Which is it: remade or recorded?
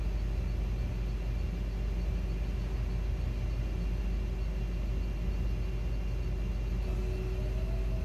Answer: recorded